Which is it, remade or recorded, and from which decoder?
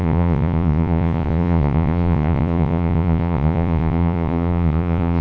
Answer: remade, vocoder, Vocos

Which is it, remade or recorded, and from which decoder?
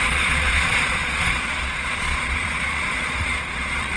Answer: remade, vocoder, Vocos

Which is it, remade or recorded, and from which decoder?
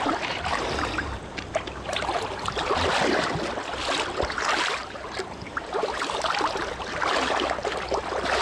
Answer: recorded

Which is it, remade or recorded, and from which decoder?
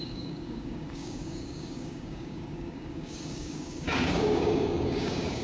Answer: remade, codec, DAC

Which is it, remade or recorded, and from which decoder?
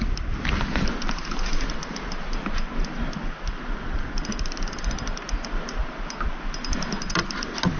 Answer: recorded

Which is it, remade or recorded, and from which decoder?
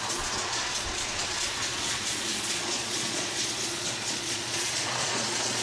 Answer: remade, vocoder, Vocos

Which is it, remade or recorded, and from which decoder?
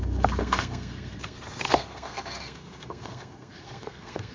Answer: remade, codec, SNAC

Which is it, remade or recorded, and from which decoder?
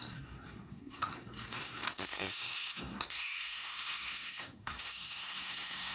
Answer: remade, codec, SNAC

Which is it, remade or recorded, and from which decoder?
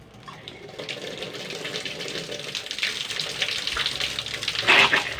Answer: recorded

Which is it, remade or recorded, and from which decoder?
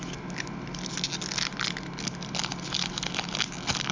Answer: recorded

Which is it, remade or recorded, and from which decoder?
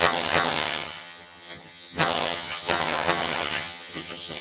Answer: remade, vocoder, HiFi-GAN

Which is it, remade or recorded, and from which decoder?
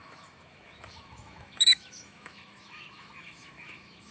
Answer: remade, autoencoder, DAC-VAE